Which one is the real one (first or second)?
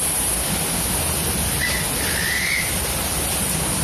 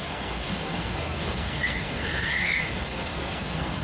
first